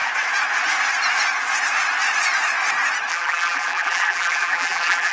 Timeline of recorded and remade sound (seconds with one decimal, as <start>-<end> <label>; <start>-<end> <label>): 0.0-3.1 recorded; 3.1-5.1 remade